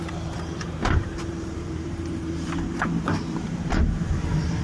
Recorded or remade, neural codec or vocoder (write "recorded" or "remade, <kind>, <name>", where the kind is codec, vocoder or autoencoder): remade, vocoder, BigVGAN v2